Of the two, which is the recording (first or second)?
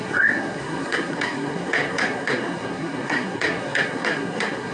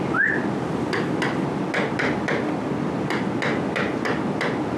second